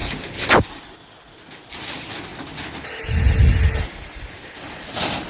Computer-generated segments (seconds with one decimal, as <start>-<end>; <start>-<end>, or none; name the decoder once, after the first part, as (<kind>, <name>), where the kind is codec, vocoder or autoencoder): none